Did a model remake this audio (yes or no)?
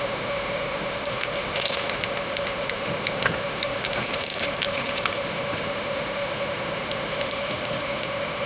yes